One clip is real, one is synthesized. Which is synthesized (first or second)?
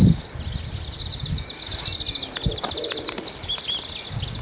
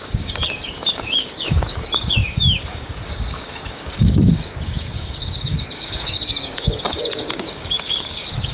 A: second